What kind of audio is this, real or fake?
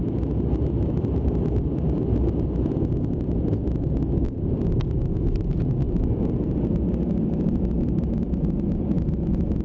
real